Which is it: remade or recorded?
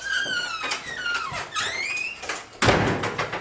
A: recorded